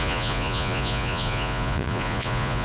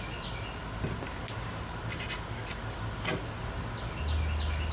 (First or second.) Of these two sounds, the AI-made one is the first